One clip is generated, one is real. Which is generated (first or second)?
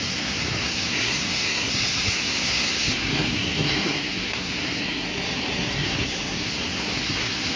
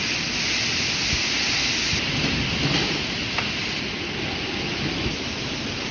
first